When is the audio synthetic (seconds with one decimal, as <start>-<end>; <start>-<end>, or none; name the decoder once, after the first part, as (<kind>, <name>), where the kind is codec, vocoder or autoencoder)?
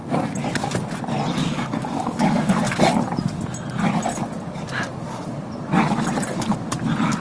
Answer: 1.4-2.8 (codec, DAC)